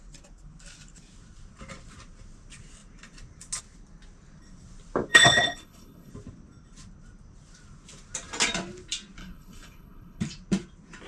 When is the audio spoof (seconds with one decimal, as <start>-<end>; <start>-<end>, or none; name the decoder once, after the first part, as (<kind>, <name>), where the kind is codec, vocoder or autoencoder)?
5.1-6.1 (codec, HILCodec); 9.2-10.2